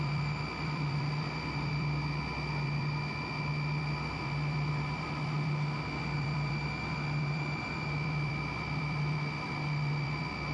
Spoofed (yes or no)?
yes